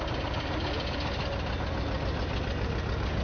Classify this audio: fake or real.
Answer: real